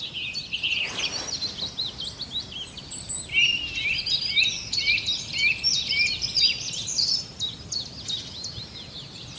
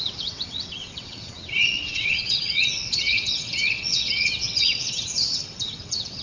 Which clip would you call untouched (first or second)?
first